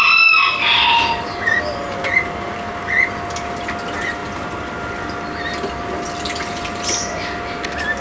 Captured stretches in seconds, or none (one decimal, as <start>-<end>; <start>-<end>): 0.0-4.2; 4.9-8.0